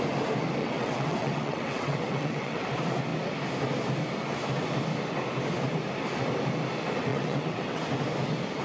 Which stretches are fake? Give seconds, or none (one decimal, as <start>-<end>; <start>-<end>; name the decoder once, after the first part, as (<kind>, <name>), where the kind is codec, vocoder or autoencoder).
0.6-2.7 (vocoder, WaveNeXt); 7.1-7.8